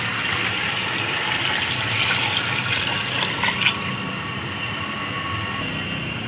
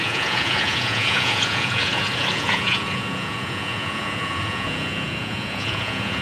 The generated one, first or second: second